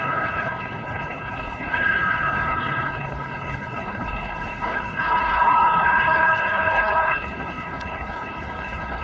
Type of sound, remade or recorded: remade